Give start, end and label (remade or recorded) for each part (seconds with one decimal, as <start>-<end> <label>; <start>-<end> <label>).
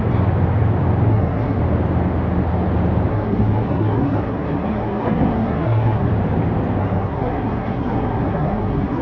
0.0-1.1 recorded; 1.1-1.6 remade; 1.6-3.1 recorded; 3.1-6.1 remade; 6.1-6.8 recorded; 6.8-9.0 remade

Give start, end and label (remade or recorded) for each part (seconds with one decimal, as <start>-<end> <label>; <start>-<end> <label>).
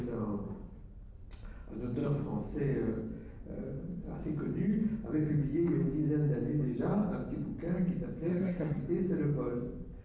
0.0-8.3 recorded; 8.3-8.8 remade; 8.8-10.0 recorded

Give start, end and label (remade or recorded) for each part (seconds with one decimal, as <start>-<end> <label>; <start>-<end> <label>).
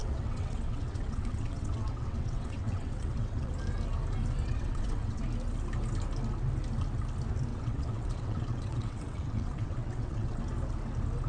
0.0-3.5 remade; 3.5-4.4 recorded; 4.4-5.2 remade; 5.2-7.5 recorded; 7.5-10.4 remade; 10.4-11.3 recorded